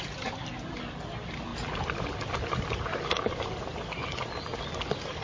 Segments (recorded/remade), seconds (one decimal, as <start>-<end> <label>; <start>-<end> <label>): 0.0-5.2 recorded